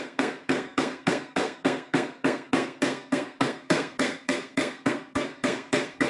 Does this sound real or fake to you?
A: fake